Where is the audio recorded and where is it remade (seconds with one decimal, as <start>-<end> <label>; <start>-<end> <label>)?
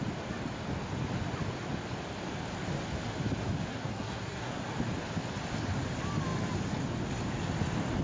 0.0-3.7 recorded; 3.7-4.7 remade; 4.7-8.0 recorded